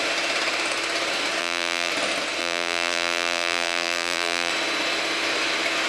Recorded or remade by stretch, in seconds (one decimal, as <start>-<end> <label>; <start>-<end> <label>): 0.0-1.4 recorded; 1.4-1.9 remade; 1.9-2.4 recorded; 2.4-4.5 remade; 4.5-5.9 recorded